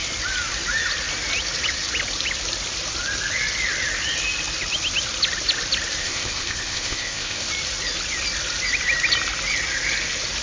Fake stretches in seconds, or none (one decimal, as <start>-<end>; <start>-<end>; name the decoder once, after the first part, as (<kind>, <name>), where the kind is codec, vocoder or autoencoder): 6.0-7.5 (codec, ZipCodec)